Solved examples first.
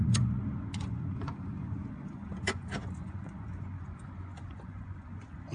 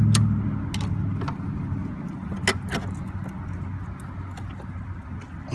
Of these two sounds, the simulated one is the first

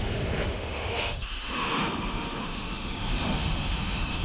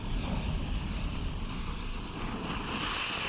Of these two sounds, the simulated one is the first